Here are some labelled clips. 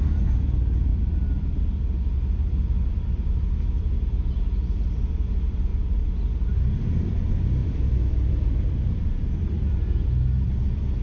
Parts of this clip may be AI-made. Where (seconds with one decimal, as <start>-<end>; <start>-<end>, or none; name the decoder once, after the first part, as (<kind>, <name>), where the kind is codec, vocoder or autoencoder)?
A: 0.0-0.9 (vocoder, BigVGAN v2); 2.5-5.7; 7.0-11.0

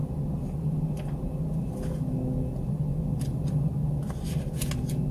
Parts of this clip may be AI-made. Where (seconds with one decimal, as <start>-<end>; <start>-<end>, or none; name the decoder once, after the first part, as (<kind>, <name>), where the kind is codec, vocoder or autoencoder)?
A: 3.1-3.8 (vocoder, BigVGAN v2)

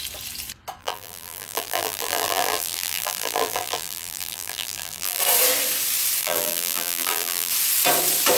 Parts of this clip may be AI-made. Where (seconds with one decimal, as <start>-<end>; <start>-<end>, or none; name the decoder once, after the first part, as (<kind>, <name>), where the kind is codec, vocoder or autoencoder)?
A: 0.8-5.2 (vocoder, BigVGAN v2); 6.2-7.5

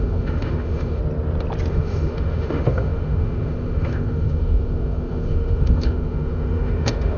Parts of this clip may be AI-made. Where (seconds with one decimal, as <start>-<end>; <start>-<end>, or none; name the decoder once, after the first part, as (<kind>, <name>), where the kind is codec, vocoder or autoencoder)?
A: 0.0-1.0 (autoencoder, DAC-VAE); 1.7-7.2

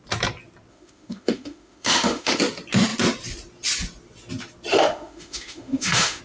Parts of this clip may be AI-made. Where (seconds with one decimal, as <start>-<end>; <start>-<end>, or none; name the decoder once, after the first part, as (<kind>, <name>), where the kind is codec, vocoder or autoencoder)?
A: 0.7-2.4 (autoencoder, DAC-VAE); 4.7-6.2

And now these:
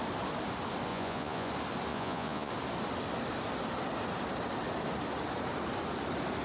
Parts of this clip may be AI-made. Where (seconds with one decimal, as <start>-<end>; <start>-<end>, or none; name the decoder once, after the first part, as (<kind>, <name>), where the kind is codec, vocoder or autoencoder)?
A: 0.9-1.5 (vocoder, Vocos); 1.9-2.5